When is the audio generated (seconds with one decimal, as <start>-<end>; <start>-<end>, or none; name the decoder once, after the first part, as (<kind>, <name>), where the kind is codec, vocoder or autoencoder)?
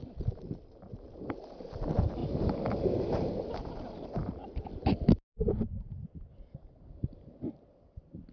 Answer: none